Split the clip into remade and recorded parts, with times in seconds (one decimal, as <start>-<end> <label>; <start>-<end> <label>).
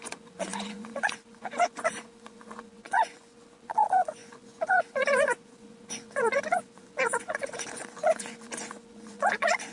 0.0-9.7 remade